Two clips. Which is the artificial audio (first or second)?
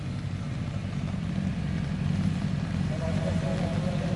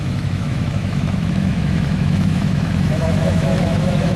second